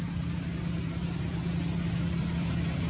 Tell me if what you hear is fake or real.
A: real